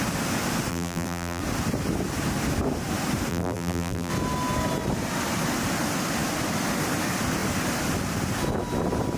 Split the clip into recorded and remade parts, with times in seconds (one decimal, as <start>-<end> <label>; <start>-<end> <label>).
0.0-0.7 recorded; 0.7-1.4 remade; 1.4-3.3 recorded; 3.3-4.1 remade; 4.1-9.2 recorded

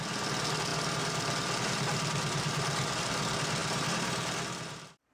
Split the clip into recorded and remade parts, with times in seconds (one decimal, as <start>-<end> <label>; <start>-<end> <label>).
0.0-3.6 recorded; 3.6-5.1 remade

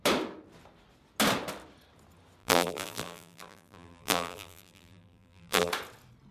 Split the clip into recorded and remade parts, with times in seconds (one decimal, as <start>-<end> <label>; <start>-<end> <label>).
0.0-2.4 recorded; 2.4-5.7 remade; 5.7-6.3 recorded